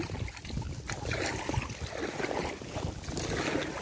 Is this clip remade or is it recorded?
recorded